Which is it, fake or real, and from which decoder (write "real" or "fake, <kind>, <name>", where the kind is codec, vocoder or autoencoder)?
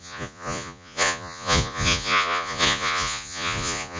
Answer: fake, vocoder, Vocos